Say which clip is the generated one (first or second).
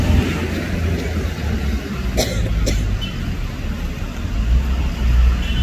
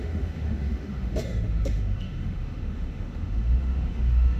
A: second